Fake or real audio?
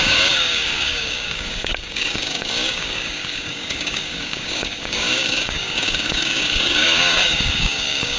fake